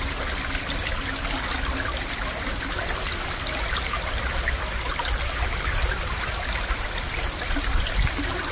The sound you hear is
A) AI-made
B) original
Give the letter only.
B